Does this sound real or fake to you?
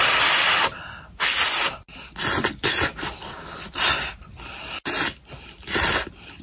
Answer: real